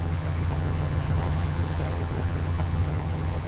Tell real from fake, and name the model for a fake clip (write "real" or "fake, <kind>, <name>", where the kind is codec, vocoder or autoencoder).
fake, vocoder, HiFi-GAN